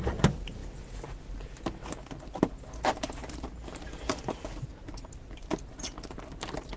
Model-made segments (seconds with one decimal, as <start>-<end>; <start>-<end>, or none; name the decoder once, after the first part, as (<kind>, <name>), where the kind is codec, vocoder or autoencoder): none